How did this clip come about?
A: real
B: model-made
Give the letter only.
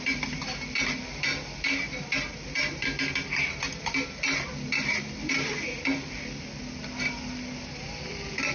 A